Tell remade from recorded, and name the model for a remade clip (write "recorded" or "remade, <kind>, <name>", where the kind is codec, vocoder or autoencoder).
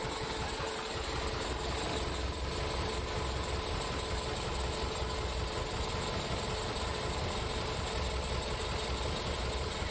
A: recorded